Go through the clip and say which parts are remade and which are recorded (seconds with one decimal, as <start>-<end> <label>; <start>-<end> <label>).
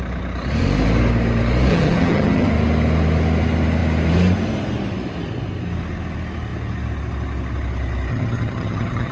0.0-1.7 recorded; 1.7-2.5 remade; 2.5-8.1 recorded; 8.1-9.1 remade